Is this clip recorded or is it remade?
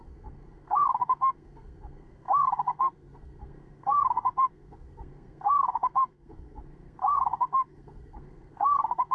remade